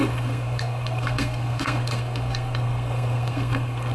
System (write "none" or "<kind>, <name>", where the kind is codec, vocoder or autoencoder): codec, SNAC